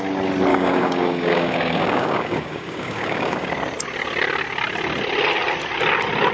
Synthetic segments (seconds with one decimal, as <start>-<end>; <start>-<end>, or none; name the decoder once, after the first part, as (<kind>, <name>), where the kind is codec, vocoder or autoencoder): 0.5-3.5 (codec, DAC)